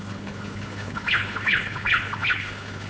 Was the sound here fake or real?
fake